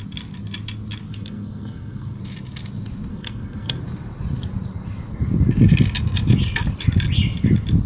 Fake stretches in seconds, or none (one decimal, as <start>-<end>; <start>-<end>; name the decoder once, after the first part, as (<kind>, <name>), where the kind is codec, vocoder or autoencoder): 1.1-2.2 (codec, SNAC); 3.1-3.8